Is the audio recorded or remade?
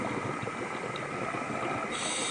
recorded